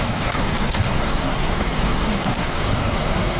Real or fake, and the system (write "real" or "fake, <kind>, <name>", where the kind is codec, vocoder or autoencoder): fake, codec, SNAC